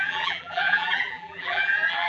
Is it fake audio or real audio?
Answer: fake